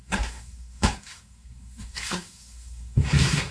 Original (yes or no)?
no